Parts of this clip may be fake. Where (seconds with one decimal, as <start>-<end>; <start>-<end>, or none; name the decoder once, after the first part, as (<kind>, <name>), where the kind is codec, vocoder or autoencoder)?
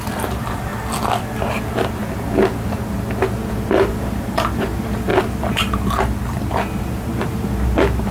0.0-0.7 (vocoder, BigVGAN v2); 1.5-2.0; 3.5-5.1; 6.8-8.1